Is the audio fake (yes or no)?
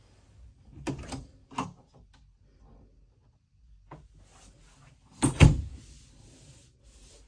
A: no